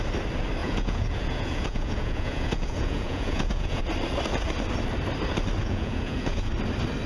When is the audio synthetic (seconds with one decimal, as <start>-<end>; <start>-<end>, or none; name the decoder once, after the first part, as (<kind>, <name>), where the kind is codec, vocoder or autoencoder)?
0.6-3.8 (vocoder, Vocos); 5.6-6.5